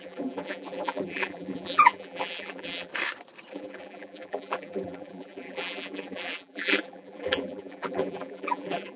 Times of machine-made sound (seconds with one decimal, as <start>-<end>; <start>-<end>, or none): 0.0-2.9; 3.5-9.0